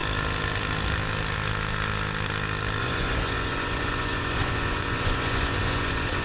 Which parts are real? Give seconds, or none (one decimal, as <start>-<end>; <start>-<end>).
0.0-2.8